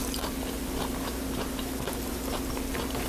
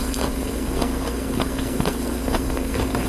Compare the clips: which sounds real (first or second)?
first